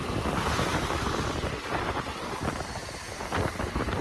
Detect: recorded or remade recorded